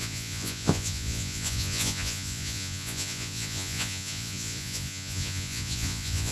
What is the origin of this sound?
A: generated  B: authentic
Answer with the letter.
A